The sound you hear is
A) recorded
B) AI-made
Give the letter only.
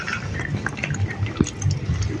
A